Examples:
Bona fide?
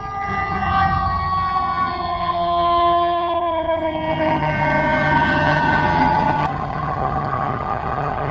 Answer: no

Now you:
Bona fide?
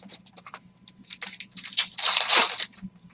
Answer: no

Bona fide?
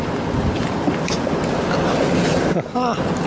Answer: yes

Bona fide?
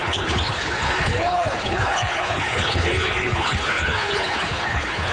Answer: no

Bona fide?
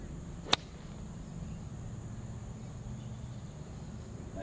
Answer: yes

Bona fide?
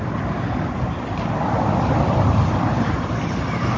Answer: yes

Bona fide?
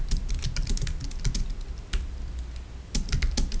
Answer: yes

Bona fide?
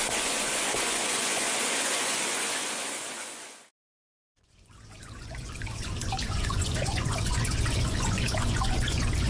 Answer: no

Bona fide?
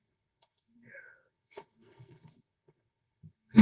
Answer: no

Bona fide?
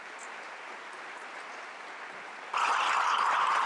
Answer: yes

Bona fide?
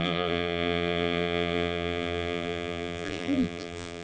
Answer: no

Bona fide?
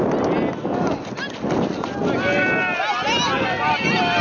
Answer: yes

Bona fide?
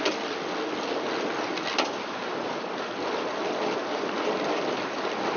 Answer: yes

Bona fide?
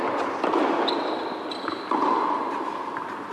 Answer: yes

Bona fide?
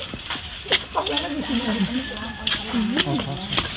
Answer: no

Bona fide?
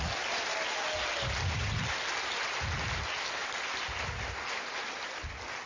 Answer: yes